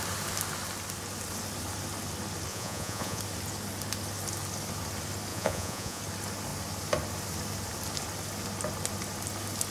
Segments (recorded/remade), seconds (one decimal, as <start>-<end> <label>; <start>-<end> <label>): 0.0-2.5 recorded; 2.5-3.2 remade; 3.2-5.3 recorded; 5.3-6.0 remade; 6.0-9.7 recorded